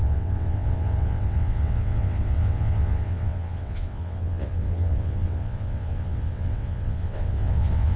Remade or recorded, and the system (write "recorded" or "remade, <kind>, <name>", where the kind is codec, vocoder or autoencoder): remade, vocoder, WaveNeXt